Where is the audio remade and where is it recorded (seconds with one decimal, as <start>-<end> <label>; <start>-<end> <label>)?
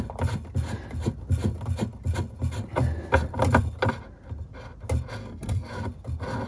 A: 0.0-5.2 recorded; 5.2-5.7 remade; 5.7-6.5 recorded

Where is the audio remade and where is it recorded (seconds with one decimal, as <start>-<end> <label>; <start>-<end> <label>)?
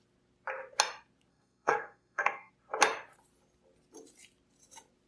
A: 0.0-1.3 recorded; 1.3-2.5 remade; 2.5-5.1 recorded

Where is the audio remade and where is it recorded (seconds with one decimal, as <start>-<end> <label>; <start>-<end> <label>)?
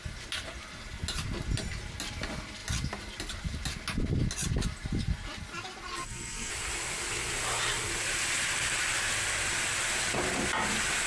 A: 0.0-5.9 recorded; 5.9-6.5 remade; 6.5-11.1 recorded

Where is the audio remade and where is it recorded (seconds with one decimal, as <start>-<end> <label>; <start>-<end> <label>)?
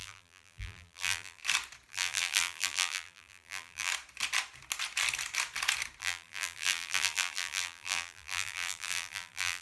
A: 0.0-1.4 remade; 1.4-1.9 recorded; 1.9-3.9 remade; 3.9-6.0 recorded; 6.0-9.6 remade